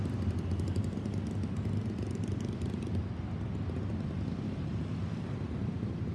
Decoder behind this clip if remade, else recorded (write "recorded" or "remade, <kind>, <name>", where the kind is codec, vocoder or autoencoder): recorded